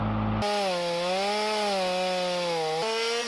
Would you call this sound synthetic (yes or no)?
no